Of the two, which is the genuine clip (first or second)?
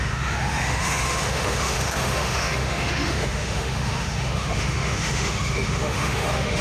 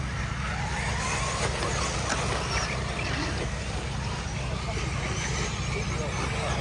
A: second